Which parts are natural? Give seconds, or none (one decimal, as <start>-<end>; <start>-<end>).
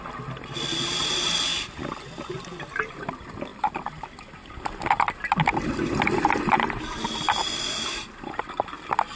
0.0-9.2